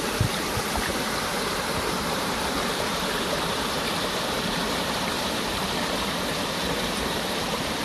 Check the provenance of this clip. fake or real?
fake